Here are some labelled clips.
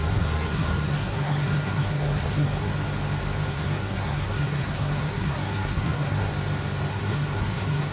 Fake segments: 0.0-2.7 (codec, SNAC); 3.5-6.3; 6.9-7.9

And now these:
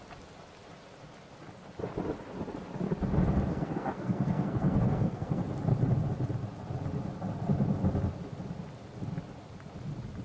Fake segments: 3.5-5.4 (codec, SNAC)

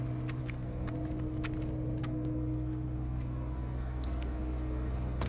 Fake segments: 0.4-0.9 (codec, SNAC); 2.0-5.3

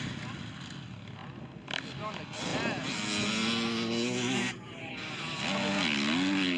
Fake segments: none